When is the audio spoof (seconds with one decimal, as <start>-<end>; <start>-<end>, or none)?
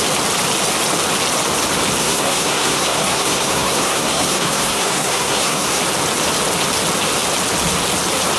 2.0-5.8